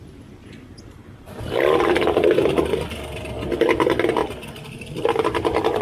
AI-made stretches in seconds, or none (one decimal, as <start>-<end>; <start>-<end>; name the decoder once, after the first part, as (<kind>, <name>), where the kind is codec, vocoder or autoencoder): none